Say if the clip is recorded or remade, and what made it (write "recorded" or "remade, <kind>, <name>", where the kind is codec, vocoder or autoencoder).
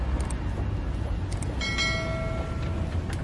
recorded